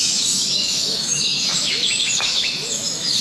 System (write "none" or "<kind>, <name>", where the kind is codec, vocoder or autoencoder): autoencoder, DAC-VAE